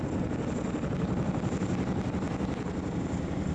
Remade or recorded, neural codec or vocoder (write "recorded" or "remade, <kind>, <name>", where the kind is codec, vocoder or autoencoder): recorded